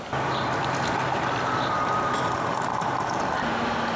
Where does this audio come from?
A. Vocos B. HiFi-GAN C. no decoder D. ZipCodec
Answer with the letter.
C